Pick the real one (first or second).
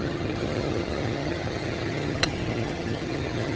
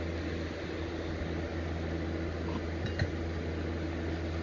second